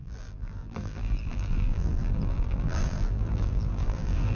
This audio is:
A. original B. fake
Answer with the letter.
B